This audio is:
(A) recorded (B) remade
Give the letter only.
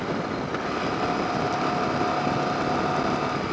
A